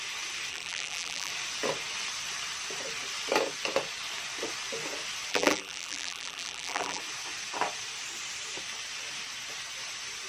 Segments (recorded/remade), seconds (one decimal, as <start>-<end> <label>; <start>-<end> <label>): 0.0-0.5 recorded; 0.5-1.3 remade; 1.3-5.3 recorded; 5.3-7.0 remade; 7.0-10.3 recorded